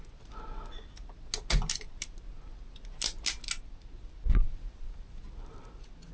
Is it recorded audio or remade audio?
recorded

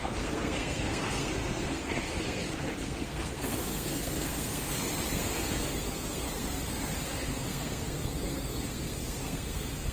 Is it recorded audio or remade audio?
remade